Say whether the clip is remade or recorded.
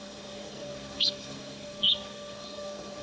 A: remade